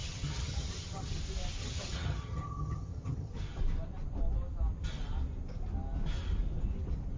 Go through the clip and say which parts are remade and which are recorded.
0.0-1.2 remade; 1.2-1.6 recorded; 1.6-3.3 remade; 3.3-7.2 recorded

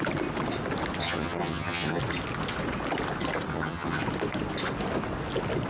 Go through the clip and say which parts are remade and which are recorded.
0.0-1.0 recorded; 1.0-2.0 remade; 2.0-3.5 recorded; 3.5-4.0 remade; 4.0-5.7 recorded